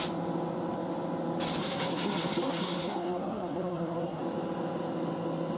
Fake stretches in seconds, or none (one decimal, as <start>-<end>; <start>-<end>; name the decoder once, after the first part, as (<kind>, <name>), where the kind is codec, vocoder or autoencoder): 1.6-4.2 (codec, SNAC)